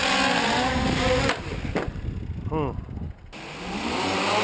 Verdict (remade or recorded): recorded